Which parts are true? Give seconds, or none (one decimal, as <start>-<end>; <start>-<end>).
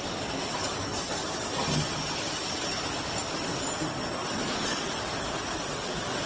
0.0-2.7